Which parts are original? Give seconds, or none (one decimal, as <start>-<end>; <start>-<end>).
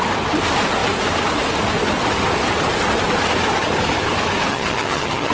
0.0-4.5